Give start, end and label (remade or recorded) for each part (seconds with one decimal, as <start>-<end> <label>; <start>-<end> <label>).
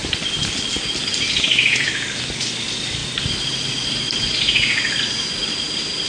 0.0-6.1 recorded